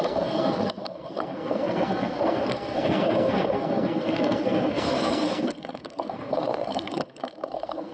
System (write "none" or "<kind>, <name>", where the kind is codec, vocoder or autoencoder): codec, SNAC